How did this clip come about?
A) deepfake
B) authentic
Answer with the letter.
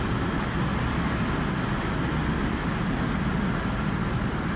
B